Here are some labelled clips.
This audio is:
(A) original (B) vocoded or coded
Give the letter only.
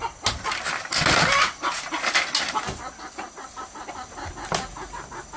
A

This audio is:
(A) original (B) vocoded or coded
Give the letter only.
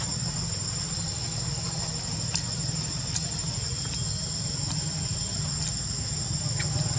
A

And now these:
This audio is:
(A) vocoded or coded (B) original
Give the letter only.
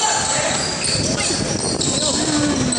B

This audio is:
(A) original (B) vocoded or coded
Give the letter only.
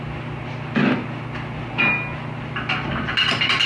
A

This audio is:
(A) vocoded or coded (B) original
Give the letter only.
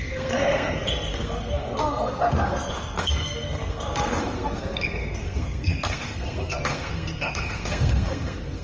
A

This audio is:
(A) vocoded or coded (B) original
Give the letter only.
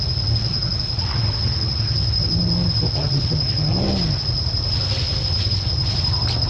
B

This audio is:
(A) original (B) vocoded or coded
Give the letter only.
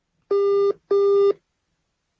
A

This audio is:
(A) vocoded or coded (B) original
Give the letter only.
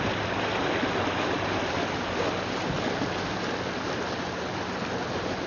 B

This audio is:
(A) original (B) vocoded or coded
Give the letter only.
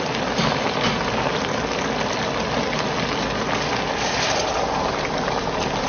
A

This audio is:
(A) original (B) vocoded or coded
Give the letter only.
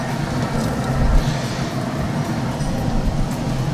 A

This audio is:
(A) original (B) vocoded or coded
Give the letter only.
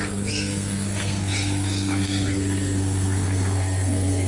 B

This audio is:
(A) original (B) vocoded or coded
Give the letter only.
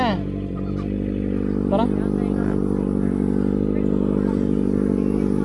A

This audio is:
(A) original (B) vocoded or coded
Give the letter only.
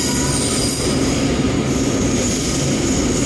A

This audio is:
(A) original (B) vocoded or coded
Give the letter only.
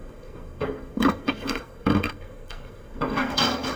B